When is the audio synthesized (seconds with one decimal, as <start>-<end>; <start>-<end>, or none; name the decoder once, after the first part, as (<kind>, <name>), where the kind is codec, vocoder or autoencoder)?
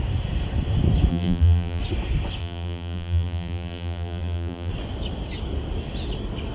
1.1-1.8 (vocoder, BigVGAN v2); 2.4-4.7